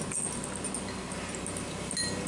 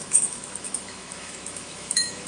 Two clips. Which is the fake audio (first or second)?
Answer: second